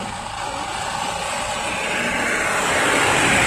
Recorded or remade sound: recorded